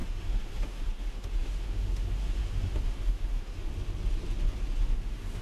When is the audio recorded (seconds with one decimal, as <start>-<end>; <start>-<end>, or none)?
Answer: 3.7-4.8